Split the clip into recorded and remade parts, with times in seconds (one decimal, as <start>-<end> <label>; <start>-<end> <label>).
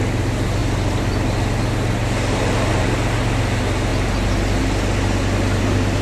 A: 0.0-6.0 recorded